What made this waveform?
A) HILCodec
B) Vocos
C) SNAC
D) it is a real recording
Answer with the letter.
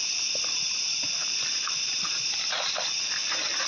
D